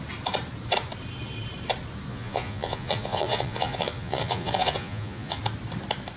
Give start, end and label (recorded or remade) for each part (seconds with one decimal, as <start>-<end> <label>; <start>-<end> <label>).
0.0-2.1 recorded; 2.1-5.4 remade; 5.4-6.2 recorded